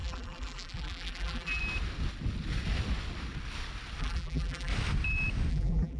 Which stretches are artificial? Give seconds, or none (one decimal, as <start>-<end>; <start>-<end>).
0.0-1.6; 4.0-4.7; 5.5-6.0